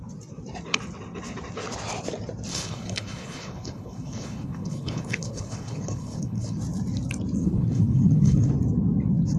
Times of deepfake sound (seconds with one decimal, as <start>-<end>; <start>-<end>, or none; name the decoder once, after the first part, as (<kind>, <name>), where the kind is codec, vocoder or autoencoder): 2.5-6.6 (codec, HILCodec); 7.4-8.5